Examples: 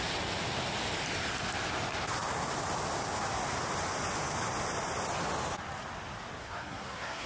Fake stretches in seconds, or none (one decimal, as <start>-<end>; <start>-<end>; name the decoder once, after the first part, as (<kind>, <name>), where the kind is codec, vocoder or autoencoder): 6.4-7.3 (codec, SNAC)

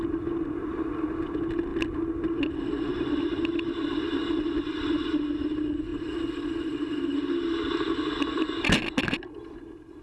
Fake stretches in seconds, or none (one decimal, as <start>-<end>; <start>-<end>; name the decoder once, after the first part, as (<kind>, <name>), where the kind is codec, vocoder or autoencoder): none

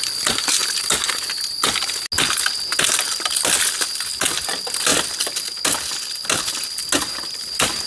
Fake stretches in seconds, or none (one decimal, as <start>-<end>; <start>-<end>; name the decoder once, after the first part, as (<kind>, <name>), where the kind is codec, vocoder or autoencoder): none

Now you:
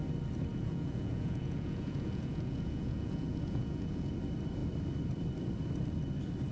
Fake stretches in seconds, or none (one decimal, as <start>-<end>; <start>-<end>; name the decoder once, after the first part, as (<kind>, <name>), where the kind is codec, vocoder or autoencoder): 0.5-4.1 (vocoder, Vocos)

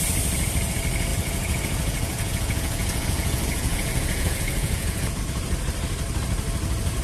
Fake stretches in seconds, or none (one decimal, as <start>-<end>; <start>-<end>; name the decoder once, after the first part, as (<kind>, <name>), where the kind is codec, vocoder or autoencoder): 1.1-5.2 (vocoder, Vocos)

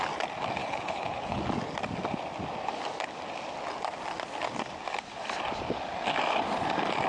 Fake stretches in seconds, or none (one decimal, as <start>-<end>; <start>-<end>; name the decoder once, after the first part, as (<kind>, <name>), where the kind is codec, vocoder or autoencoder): 0.6-1.4 (codec, HILCodec)

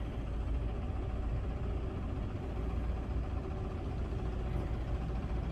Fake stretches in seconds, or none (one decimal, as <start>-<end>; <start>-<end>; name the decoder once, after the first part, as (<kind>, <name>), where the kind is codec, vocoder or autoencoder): none

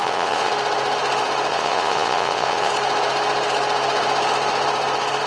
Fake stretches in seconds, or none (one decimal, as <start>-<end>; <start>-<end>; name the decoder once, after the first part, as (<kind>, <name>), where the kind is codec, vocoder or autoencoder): 0.0-0.5 (vocoder, Vocos); 1.5-2.7